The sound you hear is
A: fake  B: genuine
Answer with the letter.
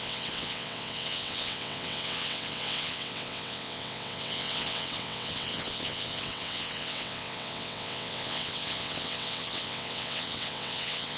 A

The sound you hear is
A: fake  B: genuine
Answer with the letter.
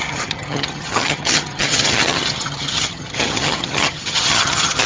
A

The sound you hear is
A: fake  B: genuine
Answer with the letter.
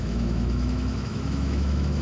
A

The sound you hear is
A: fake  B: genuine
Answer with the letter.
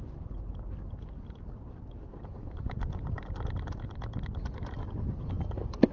B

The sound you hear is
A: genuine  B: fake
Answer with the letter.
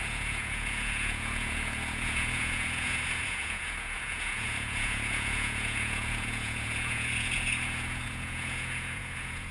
B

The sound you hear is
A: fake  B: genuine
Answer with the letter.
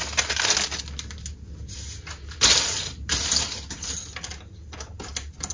B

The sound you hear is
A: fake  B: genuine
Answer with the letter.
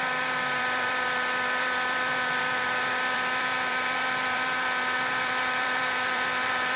A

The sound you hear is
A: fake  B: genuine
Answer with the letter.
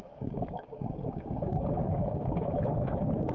A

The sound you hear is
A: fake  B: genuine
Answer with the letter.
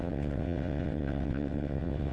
A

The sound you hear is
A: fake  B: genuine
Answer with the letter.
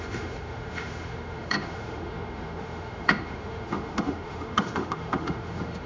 A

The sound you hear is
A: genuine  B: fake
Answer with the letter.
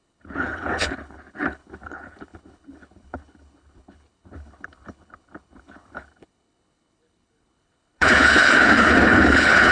B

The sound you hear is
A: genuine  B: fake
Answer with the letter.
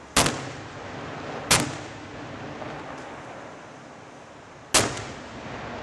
A